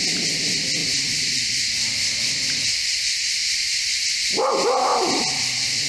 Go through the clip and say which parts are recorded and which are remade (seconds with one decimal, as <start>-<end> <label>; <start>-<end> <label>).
0.0-5.9 recorded